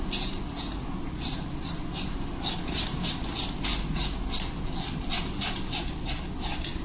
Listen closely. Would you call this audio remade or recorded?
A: recorded